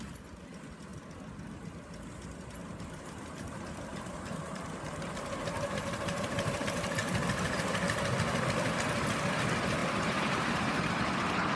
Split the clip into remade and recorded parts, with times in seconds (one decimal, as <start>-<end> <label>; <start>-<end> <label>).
0.0-2.6 recorded; 2.6-6.6 remade; 6.6-7.0 recorded; 7.0-7.6 remade; 7.6-9.8 recorded; 9.8-10.7 remade; 10.7-11.6 recorded